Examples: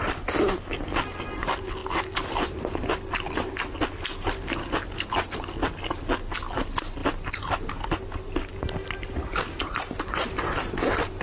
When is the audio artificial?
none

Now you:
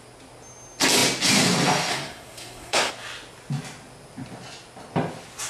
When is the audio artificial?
1.9-2.9 (codec, SNAC)

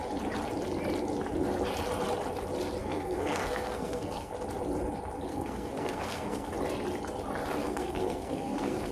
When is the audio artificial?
2.8-4.3 (codec, SNAC); 5.3-6.5; 7.6-8.9

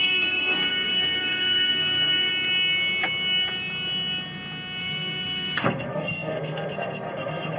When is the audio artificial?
0.0-2.3 (codec, SNAC); 4.8-7.6